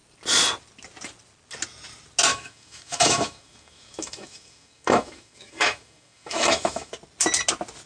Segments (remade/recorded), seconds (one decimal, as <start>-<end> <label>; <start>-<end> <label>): 0.0-2.3 recorded; 2.3-6.9 remade; 6.9-7.9 recorded